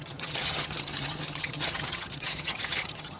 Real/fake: fake